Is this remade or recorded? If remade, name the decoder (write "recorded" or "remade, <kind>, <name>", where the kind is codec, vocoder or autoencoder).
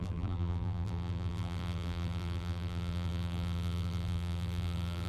remade, vocoder, BigVGAN v2